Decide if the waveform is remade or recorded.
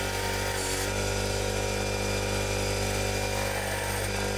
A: recorded